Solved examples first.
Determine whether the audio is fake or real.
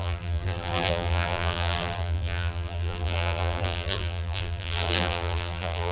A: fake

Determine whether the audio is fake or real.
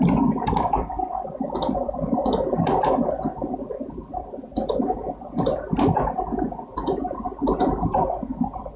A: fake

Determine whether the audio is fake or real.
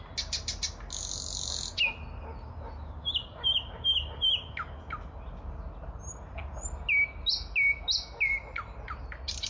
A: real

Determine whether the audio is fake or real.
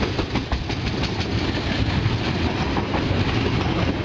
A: real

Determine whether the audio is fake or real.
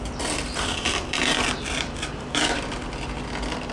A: real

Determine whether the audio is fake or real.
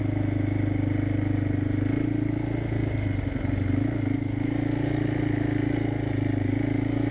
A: real